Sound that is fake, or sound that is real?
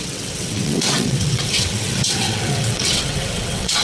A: fake